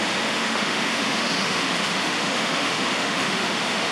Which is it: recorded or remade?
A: remade